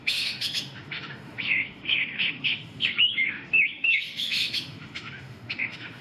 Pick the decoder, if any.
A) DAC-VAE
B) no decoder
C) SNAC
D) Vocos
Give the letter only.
A